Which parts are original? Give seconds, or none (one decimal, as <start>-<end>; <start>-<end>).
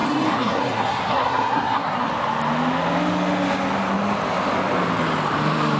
2.1-5.8